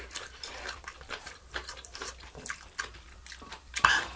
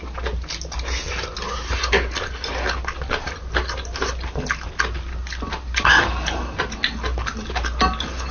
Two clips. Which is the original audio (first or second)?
second